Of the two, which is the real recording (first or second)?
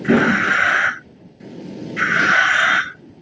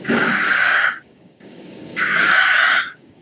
first